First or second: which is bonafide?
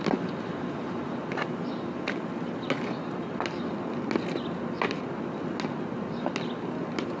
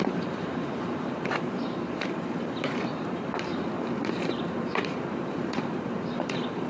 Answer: first